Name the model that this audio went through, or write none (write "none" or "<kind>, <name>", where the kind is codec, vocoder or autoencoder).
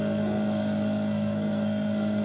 codec, SNAC